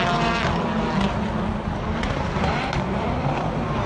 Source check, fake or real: real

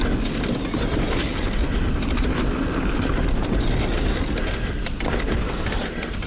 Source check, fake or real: real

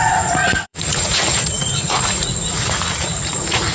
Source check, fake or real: fake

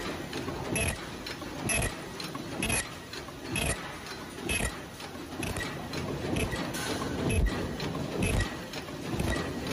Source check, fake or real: real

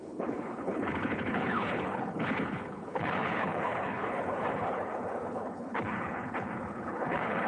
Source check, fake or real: fake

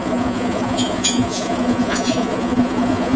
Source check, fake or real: fake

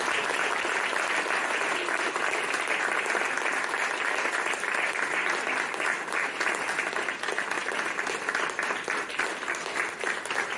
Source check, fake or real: real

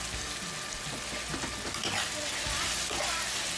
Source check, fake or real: real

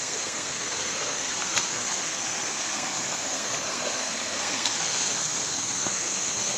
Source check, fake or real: fake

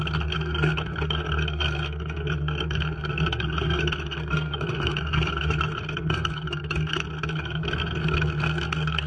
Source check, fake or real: fake